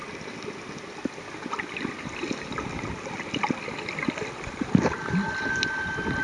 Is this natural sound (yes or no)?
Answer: yes